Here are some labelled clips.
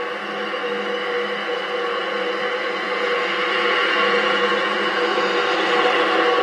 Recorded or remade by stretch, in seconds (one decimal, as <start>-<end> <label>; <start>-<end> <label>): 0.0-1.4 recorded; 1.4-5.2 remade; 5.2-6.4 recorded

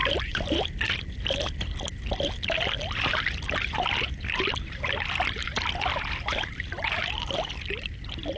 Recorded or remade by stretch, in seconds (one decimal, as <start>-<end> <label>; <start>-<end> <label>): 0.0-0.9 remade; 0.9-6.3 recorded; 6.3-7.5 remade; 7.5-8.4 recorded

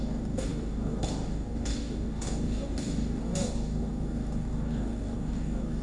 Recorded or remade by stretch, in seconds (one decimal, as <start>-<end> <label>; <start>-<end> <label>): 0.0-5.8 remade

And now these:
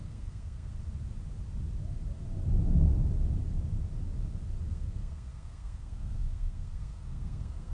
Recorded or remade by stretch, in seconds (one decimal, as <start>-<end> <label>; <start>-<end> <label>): 0.0-0.7 remade; 0.7-4.7 recorded; 4.7-7.7 remade

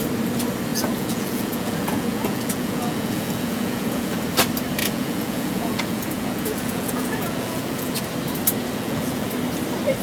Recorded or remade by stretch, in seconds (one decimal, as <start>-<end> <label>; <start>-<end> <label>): 0.0-0.7 recorded; 0.7-4.2 remade; 4.2-4.8 recorded; 4.8-8.0 remade; 8.0-8.6 recorded; 8.6-9.3 remade; 9.3-10.0 recorded